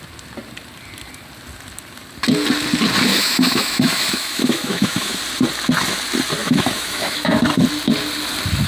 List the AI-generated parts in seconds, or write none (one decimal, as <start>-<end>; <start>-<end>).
3.1-5.2; 6.4-7.4